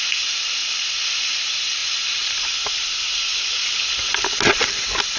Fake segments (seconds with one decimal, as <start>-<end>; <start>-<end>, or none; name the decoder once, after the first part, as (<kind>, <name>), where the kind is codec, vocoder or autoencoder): none